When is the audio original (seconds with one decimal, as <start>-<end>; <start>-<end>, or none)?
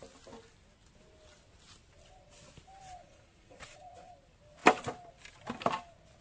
0.0-3.0; 4.1-6.2